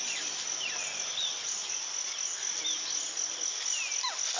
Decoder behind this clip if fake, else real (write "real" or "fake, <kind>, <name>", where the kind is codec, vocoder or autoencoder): real